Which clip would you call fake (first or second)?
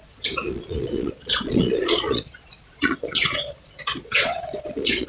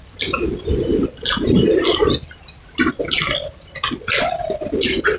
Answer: first